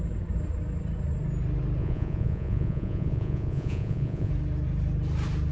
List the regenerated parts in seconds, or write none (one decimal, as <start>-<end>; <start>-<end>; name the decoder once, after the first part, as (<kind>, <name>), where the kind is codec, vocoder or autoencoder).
1.8-4.3 (vocoder, Vocos)